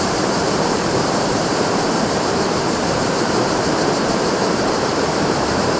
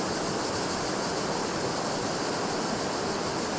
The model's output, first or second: first